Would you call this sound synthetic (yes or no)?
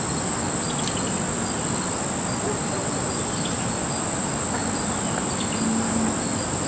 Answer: no